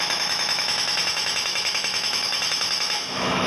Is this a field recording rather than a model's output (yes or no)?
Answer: no